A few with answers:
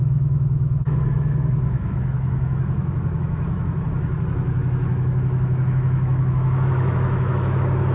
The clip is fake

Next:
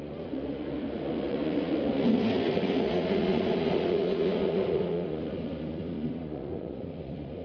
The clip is fake